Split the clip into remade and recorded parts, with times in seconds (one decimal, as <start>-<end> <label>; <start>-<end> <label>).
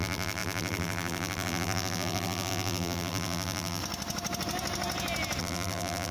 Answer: 0.0-3.8 remade; 3.8-5.4 recorded; 5.4-6.1 remade